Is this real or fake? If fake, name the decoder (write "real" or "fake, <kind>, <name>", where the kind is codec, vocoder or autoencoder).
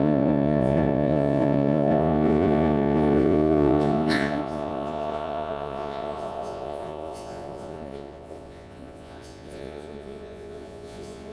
fake, vocoder, Vocos